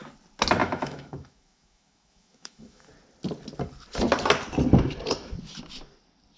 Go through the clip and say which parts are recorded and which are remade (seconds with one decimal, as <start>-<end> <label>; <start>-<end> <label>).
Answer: 0.0-0.6 recorded; 0.6-2.9 remade; 2.9-6.4 recorded